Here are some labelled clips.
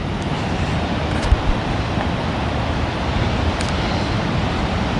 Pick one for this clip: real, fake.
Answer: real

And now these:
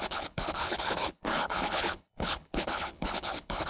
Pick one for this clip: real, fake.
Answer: fake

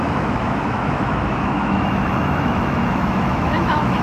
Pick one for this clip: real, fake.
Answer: fake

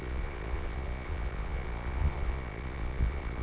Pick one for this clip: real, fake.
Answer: fake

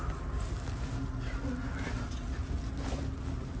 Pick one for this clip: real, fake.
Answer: real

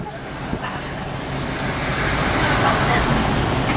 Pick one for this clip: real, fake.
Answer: real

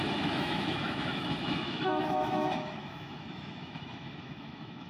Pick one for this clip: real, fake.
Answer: fake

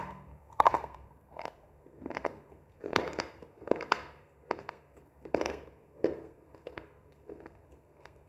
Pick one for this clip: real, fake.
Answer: fake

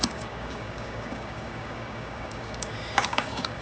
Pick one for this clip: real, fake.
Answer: fake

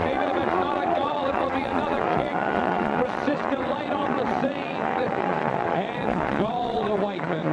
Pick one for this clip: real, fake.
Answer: fake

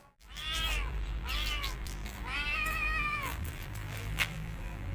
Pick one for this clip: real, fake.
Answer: fake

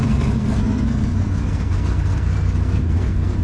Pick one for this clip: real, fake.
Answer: fake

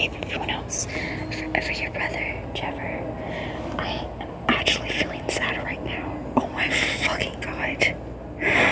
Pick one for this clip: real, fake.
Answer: real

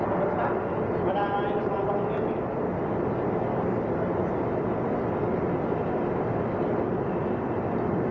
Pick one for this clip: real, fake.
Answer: real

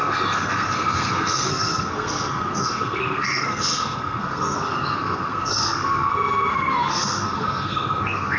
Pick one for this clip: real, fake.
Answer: fake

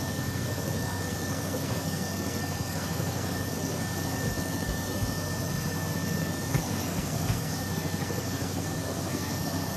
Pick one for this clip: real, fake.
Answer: fake